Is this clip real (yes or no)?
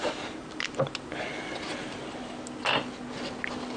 yes